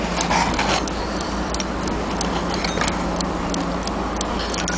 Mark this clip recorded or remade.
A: recorded